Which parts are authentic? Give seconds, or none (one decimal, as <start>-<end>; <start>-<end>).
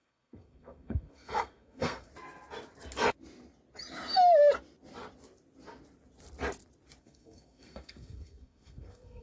2.1-7.0